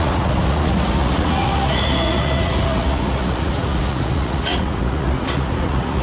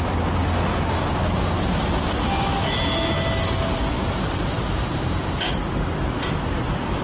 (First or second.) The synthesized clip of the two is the first